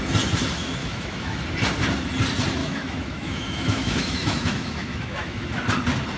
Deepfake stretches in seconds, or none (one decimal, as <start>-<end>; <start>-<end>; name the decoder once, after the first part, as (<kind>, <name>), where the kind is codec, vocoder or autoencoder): 0.8-1.4 (autoencoder, DAC-VAE); 2.6-5.5